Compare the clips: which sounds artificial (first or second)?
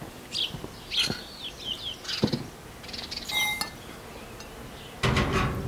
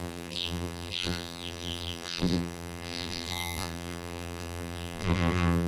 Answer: second